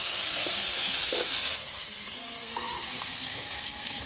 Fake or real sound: fake